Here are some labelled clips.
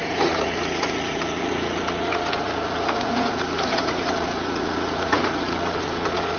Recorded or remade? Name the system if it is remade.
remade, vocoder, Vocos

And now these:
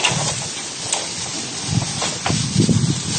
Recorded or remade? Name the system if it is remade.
recorded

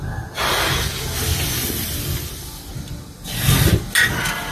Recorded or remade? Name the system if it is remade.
recorded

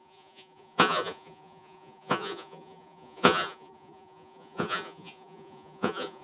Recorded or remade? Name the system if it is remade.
remade, vocoder, Vocos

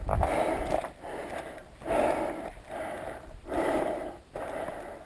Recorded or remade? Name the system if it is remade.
recorded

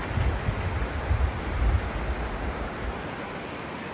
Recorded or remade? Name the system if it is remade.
recorded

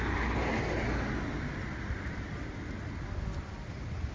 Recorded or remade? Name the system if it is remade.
recorded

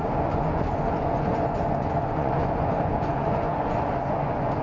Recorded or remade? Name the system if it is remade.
remade, vocoder, Vocos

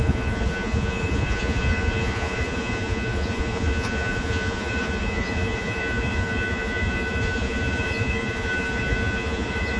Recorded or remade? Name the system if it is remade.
remade, vocoder, Vocos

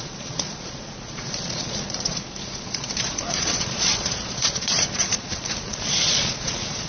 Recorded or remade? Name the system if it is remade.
remade, vocoder, Vocos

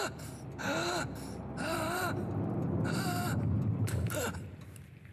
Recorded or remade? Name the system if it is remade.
recorded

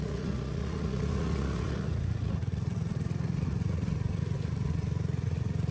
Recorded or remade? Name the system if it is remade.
remade, vocoder, Vocos